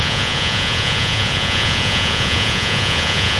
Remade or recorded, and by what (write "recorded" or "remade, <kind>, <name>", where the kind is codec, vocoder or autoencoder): remade, vocoder, Vocos